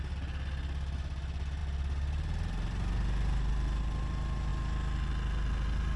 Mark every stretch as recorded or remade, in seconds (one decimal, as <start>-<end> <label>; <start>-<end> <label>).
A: 0.0-6.0 recorded